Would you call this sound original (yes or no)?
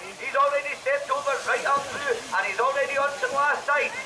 yes